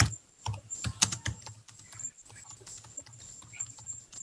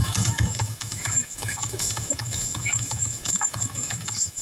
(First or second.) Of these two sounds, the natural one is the first